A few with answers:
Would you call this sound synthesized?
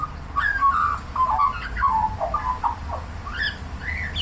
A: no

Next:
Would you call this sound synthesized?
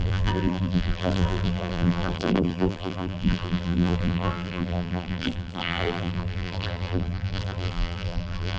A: yes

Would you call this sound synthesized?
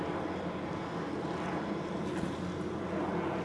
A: no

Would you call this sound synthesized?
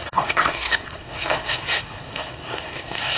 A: yes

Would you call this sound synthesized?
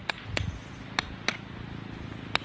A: no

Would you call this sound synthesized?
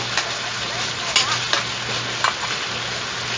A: no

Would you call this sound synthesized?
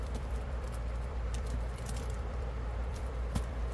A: yes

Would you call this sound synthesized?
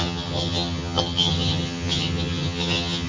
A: yes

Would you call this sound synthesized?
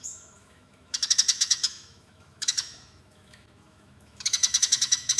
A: yes